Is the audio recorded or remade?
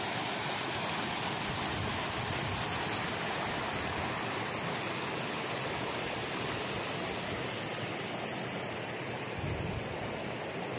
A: recorded